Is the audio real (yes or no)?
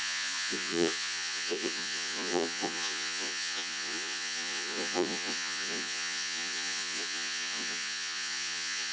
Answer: no